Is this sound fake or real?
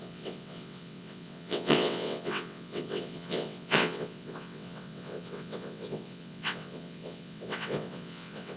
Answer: fake